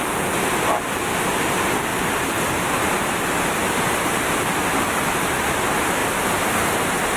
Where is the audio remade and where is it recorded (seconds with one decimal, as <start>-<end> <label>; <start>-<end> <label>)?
0.0-7.2 recorded